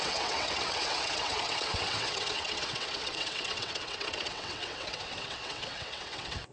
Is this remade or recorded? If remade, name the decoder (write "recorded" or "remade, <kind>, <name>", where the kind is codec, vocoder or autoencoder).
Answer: remade, vocoder, WaveNeXt